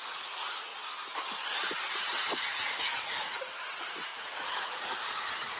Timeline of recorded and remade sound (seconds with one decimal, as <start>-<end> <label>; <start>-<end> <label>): 0.0-0.7 remade; 0.7-1.9 recorded; 1.9-5.6 remade